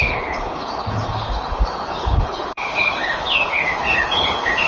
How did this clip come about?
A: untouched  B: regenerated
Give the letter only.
B